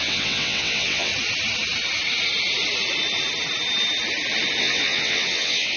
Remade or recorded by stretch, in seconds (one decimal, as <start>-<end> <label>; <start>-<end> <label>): 0.0-1.1 remade; 1.1-4.6 recorded; 4.6-5.8 remade